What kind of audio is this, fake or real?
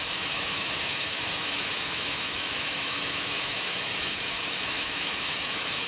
fake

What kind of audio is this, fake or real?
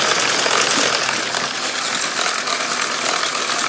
real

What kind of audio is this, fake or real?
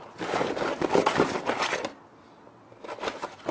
real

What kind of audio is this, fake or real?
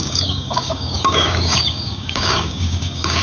fake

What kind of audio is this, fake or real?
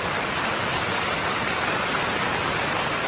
real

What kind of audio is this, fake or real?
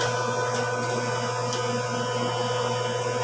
real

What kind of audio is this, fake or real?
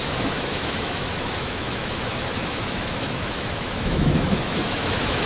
fake